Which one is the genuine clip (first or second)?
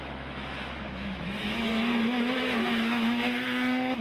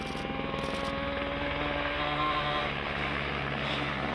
second